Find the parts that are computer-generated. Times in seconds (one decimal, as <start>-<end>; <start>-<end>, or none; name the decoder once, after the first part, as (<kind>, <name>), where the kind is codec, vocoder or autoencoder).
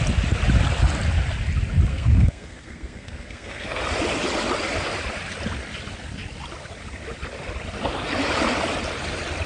1.9-3.8 (codec, SNAC)